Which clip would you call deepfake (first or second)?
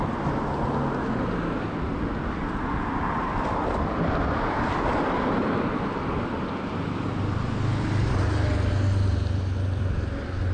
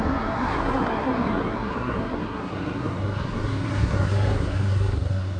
second